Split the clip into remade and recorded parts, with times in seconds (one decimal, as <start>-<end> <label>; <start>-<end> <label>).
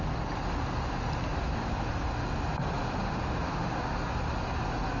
0.0-3.0 recorded; 3.0-3.8 remade; 3.8-5.0 recorded